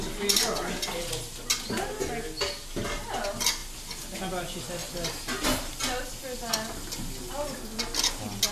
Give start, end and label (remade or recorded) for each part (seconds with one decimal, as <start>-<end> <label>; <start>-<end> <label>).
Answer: 0.0-8.5 recorded